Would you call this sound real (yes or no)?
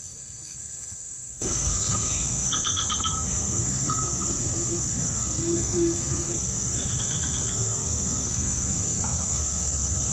no